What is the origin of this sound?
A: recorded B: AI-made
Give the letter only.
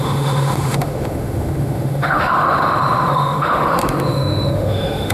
B